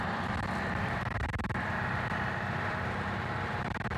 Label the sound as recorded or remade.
remade